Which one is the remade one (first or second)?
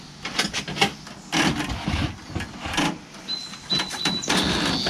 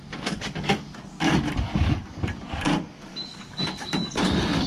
second